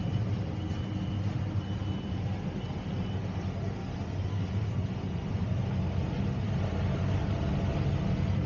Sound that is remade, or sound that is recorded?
recorded